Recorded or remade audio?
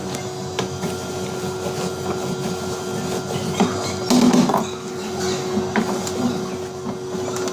recorded